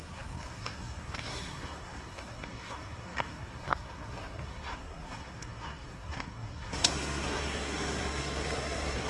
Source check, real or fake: fake